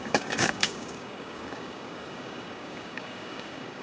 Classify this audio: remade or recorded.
remade